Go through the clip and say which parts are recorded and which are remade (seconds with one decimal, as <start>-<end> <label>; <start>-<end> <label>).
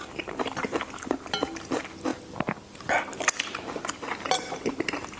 0.0-5.2 recorded